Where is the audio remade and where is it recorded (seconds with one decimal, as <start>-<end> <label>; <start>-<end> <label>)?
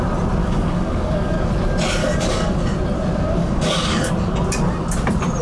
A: 0.0-0.4 recorded; 0.4-1.5 remade; 1.5-2.0 recorded; 2.0-2.6 remade; 2.6-3.4 recorded; 3.4-4.1 remade; 4.1-5.4 recorded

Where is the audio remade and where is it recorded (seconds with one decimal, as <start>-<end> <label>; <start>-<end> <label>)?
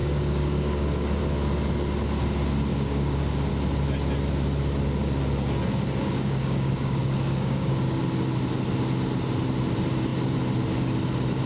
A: 0.0-1.2 remade; 1.2-2.7 recorded; 2.7-3.5 remade; 3.5-6.0 recorded; 6.0-8.0 remade; 8.0-11.5 recorded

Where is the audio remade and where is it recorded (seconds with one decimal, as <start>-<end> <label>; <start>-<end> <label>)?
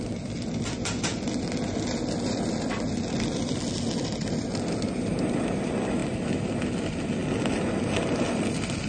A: 0.0-8.9 recorded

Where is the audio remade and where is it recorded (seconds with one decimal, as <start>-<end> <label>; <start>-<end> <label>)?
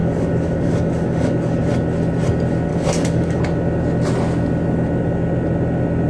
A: 0.0-1.6 remade; 1.6-2.7 recorded; 2.7-3.4 remade; 3.4-6.1 recorded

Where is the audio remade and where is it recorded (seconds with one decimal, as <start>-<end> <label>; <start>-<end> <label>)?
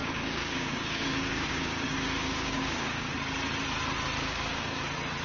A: 0.0-3.1 remade; 3.1-4.2 recorded; 4.2-4.8 remade; 4.8-5.2 recorded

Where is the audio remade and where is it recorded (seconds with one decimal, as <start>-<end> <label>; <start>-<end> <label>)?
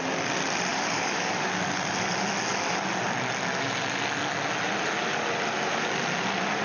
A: 0.0-0.7 recorded; 0.7-1.5 remade; 1.5-6.6 recorded